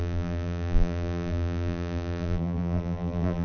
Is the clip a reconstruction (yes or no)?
yes